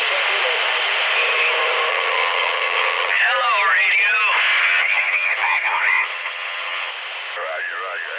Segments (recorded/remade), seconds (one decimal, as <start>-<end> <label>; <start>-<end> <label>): 0.0-1.9 recorded; 1.9-3.2 remade; 3.2-4.6 recorded; 4.6-6.9 remade; 6.9-8.2 recorded